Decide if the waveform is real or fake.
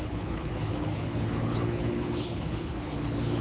fake